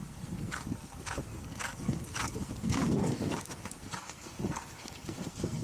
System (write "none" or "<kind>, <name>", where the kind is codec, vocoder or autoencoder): codec, SNAC